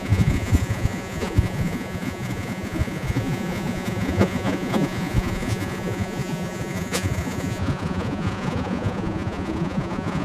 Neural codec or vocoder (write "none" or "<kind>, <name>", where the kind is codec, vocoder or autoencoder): vocoder, Vocos